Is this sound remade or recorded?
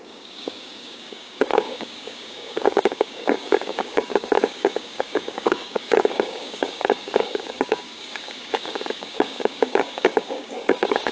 remade